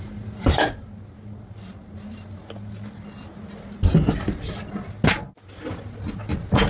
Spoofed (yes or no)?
no